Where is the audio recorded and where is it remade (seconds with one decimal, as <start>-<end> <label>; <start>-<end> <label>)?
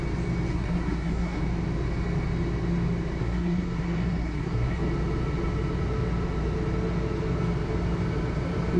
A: 0.0-0.5 recorded; 0.5-1.4 remade; 1.4-3.2 recorded; 3.2-4.8 remade; 4.8-8.8 recorded